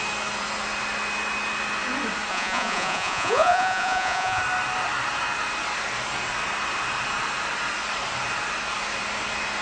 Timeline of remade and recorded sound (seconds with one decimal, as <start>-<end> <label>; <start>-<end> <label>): 0.0-2.3 recorded; 2.3-4.4 remade; 4.4-9.6 recorded